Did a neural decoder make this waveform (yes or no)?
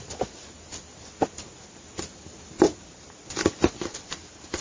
no